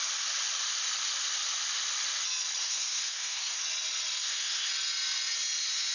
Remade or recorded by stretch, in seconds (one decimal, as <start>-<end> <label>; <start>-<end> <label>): 0.0-2.6 recorded; 2.6-3.6 remade; 3.6-4.2 recorded; 4.2-4.7 remade; 4.7-5.9 recorded